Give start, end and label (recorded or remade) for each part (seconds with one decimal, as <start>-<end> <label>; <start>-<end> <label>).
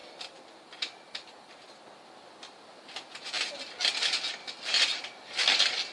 0.0-5.9 recorded